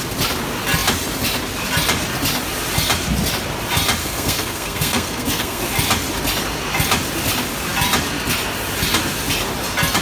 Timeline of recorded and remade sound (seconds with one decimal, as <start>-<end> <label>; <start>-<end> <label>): 0.0-4.0 recorded; 4.0-5.6 remade; 5.6-10.0 recorded